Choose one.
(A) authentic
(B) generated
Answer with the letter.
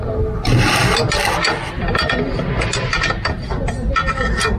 A